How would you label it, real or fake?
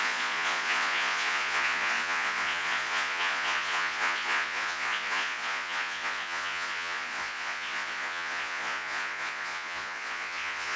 fake